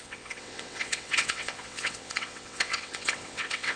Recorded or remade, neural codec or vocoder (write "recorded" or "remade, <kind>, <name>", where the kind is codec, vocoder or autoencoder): remade, vocoder, WaveNeXt